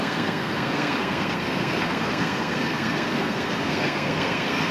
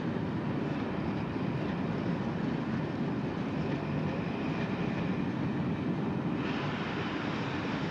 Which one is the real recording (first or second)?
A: second